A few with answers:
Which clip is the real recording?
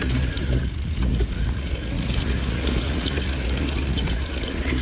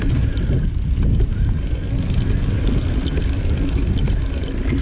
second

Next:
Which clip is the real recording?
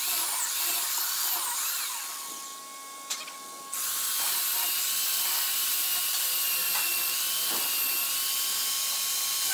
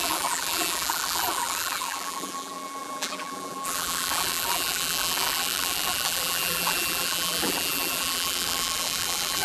first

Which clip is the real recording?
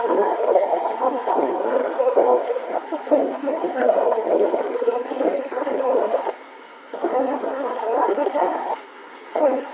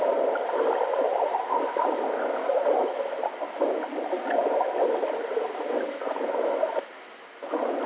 second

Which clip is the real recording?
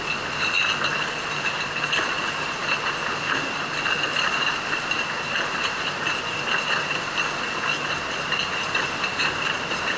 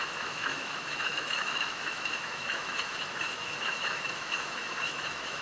first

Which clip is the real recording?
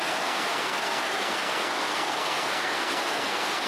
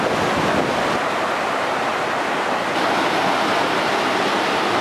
second